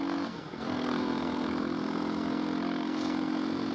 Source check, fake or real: fake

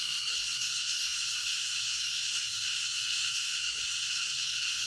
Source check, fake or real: fake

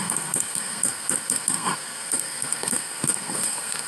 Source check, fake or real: fake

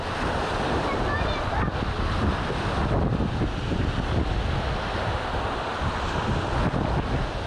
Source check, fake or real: real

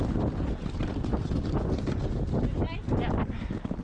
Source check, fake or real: real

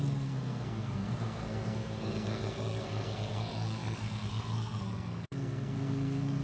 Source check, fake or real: fake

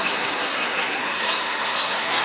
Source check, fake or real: fake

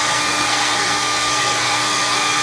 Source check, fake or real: fake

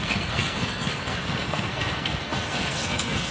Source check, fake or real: fake